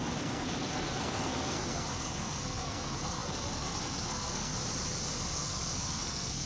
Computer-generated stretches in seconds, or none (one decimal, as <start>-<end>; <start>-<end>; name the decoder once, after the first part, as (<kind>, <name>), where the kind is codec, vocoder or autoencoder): 0.0-4.5 (codec, SNAC); 5.1-6.5